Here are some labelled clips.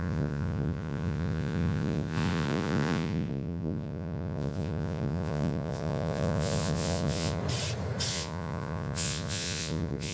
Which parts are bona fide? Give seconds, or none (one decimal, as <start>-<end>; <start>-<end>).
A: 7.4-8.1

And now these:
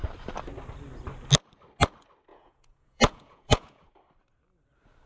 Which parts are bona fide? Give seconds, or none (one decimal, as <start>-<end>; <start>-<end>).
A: 0.0-2.3; 3.9-5.1

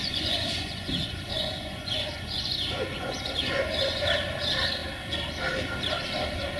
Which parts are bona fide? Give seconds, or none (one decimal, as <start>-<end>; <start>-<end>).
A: 4.0-6.6